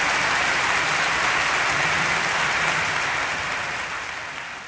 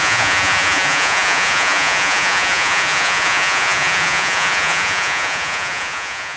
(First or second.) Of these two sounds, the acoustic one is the first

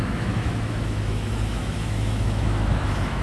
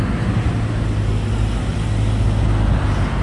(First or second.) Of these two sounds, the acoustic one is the second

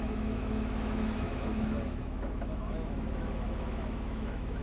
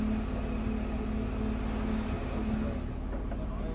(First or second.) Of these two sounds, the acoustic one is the second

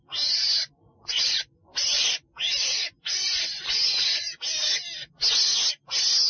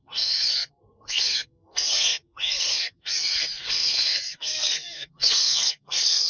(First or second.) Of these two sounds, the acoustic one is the first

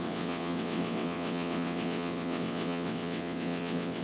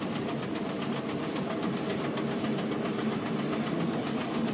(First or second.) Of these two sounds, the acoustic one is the second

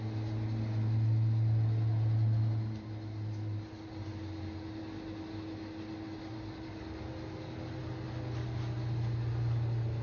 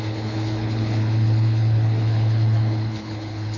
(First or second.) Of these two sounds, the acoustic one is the first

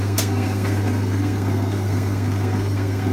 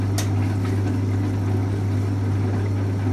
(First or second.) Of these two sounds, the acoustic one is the second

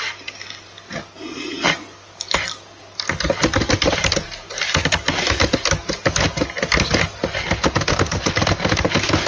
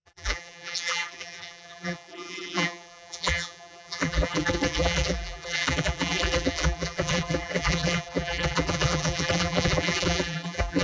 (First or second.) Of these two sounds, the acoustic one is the first